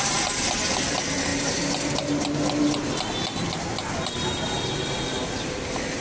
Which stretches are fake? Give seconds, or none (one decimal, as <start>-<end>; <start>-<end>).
none